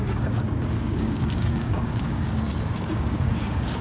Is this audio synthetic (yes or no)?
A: yes